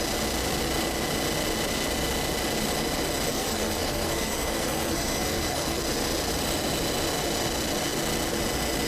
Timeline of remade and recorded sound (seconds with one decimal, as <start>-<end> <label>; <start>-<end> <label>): 0.0-3.3 recorded; 3.3-5.8 remade; 5.8-8.9 recorded